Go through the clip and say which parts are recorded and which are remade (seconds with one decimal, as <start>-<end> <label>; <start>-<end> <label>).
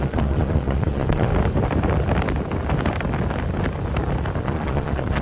0.0-1.3 remade; 1.3-4.4 recorded; 4.4-5.2 remade